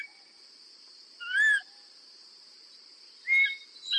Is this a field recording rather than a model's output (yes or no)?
yes